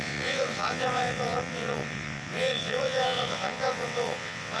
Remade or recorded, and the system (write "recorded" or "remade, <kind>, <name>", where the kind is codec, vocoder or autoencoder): remade, vocoder, WaveNeXt